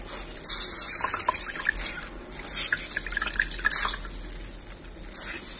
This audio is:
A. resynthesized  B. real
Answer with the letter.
B